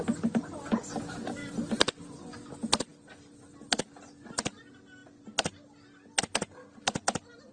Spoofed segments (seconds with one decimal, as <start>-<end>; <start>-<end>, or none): none